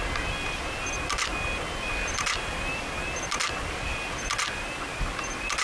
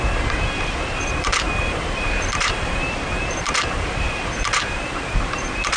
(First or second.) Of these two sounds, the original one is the first